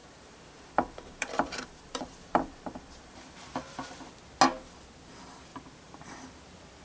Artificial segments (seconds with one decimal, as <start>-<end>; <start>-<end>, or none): 0.0-4.1; 5.5-6.1